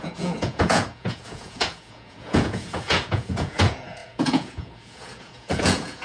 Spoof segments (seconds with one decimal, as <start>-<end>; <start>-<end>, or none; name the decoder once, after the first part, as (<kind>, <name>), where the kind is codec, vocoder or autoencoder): 0.0-6.0 (vocoder, Vocos)